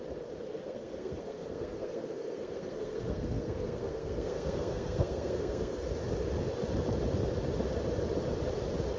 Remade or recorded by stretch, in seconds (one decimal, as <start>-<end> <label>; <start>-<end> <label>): 0.0-0.6 recorded; 0.6-5.8 remade; 5.8-9.0 recorded